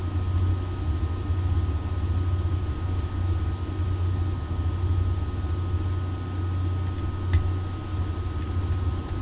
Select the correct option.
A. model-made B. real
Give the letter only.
B